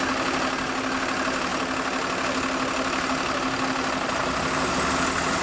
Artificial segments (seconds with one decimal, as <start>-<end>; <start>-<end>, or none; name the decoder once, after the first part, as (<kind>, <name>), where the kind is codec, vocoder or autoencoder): none